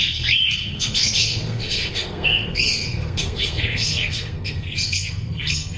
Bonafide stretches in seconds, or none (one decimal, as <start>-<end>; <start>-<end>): none